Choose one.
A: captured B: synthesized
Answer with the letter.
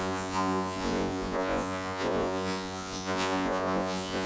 B